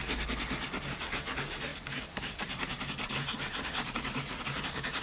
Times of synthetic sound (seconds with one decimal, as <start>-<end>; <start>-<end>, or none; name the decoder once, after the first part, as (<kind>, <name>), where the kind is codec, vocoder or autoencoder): 1.7-5.0 (vocoder, BigVGAN v2)